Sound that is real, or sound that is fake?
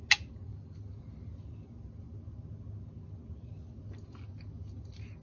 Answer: real